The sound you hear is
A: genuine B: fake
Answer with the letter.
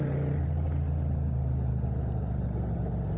A